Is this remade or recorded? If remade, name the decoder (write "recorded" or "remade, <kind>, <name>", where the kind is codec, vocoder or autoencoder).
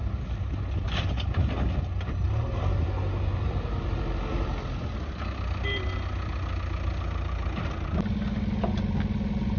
recorded